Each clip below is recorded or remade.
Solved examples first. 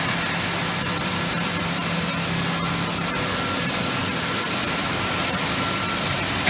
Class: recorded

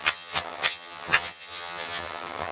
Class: remade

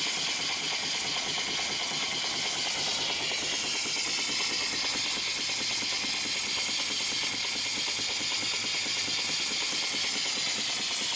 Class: recorded